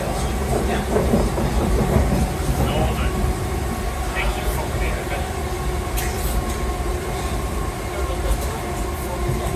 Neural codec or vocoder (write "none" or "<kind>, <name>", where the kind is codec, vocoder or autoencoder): none